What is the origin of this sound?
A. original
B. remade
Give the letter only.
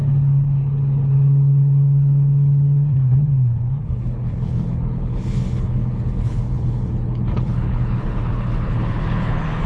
B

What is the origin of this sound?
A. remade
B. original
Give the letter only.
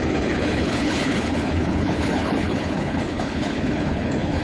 A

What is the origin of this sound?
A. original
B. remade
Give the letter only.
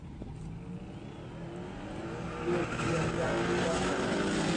A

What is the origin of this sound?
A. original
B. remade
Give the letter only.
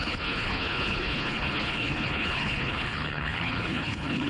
B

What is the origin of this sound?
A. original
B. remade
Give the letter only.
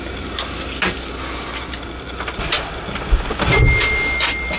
A